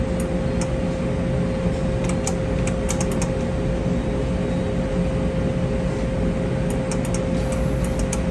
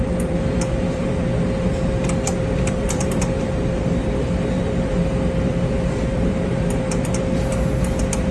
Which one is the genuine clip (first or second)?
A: first